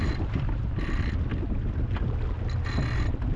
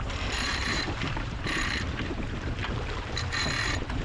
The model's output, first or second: second